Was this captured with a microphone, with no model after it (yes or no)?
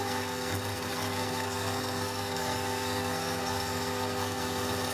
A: no